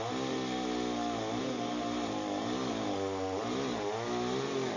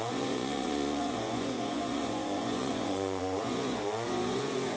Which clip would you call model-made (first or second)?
second